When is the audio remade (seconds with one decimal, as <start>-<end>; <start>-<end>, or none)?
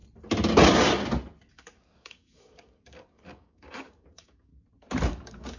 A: 1.5-4.5; 5.1-5.6